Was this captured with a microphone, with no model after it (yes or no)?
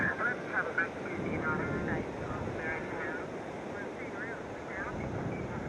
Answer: yes